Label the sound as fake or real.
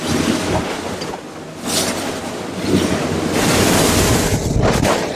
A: real